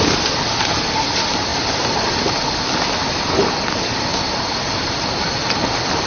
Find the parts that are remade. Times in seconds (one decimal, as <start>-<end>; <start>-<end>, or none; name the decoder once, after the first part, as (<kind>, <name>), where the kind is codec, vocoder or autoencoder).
1.5-2.8 (vocoder, BigVGAN v2)